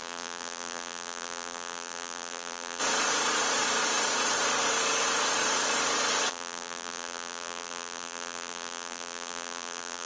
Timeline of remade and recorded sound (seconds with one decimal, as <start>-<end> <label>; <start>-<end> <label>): 0.0-2.8 remade; 2.8-6.3 recorded; 6.3-10.1 remade